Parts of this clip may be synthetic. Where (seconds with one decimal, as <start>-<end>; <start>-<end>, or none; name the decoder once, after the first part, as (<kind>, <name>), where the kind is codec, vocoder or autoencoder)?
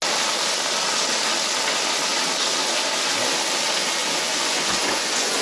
4.0-5.4 (vocoder, Vocos)